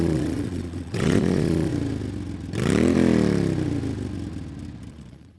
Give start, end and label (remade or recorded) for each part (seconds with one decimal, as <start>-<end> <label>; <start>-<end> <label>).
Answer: 0.0-1.7 remade; 1.7-4.9 recorded; 4.9-5.4 remade